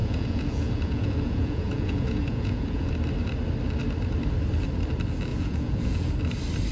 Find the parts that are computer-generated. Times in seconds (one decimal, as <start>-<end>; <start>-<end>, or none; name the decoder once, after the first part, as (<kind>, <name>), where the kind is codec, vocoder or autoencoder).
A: 0.0-2.9 (vocoder, Vocos); 5.3-6.1